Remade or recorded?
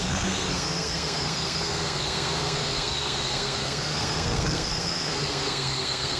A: remade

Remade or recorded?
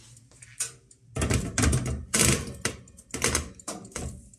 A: recorded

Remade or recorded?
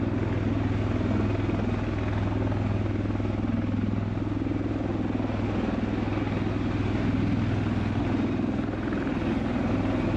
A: recorded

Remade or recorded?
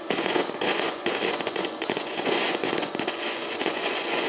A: remade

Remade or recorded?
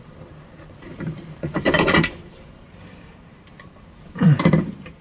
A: remade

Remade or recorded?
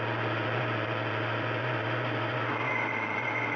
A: remade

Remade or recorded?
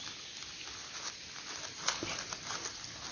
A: recorded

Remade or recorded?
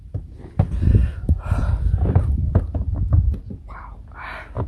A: recorded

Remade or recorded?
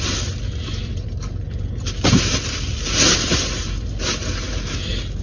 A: recorded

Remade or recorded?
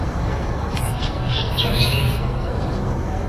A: remade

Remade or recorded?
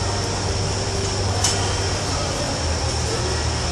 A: recorded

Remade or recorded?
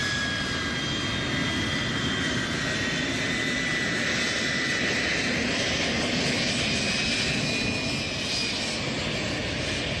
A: recorded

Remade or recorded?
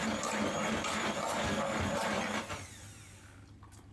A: recorded